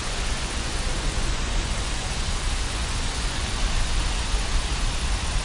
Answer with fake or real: fake